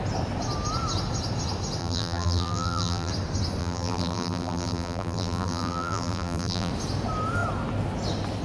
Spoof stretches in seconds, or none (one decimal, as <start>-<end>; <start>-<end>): 1.8-3.1; 3.6-6.7